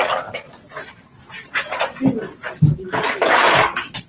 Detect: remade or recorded recorded